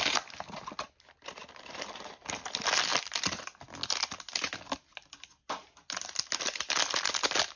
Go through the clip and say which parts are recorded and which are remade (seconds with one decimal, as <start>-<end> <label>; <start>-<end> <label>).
0.0-7.6 recorded